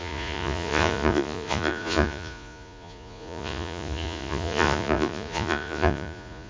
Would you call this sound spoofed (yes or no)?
yes